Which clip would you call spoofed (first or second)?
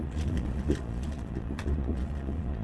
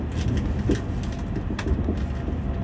first